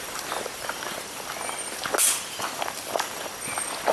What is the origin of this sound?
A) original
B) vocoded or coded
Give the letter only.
A